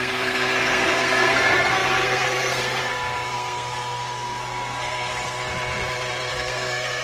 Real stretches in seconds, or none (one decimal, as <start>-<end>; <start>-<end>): 5.5-6.3